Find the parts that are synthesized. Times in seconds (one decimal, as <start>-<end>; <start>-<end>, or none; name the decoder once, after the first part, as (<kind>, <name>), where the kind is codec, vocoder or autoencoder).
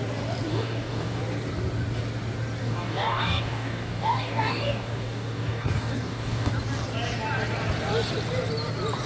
0.5-1.2 (codec, DAC); 2.6-6.5